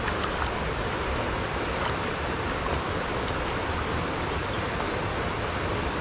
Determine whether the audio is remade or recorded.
recorded